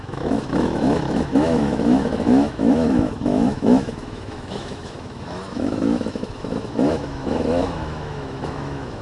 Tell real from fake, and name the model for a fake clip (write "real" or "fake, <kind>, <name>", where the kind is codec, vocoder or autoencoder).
fake, autoencoder, DAC-VAE